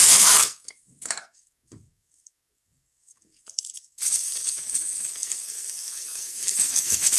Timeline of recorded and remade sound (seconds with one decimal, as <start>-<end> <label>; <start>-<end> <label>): 0.0-7.2 remade